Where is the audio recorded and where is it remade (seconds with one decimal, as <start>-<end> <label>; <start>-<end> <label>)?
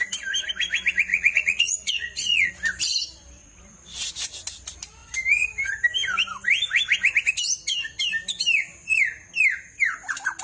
0.0-1.1 recorded; 1.1-2.5 remade; 2.5-3.4 recorded; 3.4-4.1 remade; 4.1-10.4 recorded